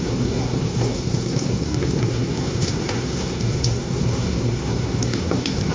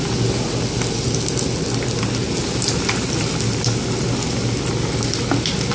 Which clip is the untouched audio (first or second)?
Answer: second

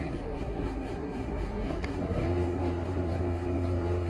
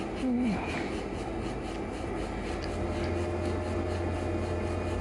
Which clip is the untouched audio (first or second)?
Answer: second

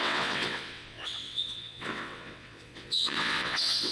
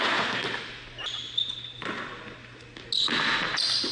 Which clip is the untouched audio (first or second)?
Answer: second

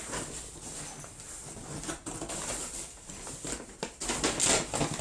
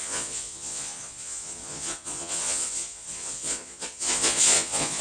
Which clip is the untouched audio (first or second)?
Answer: first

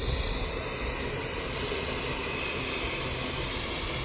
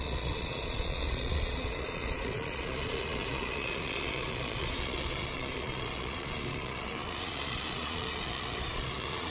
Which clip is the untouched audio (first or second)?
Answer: first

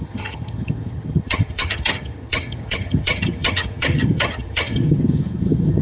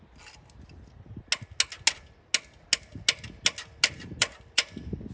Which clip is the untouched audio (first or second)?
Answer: second